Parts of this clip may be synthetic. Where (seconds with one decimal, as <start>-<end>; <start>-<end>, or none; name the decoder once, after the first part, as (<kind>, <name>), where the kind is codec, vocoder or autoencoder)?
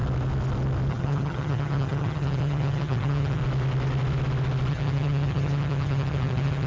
0.9-3.4 (vocoder, HiFi-GAN); 4.7-6.7